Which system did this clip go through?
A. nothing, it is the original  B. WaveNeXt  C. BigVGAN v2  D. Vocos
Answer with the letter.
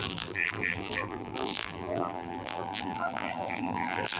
C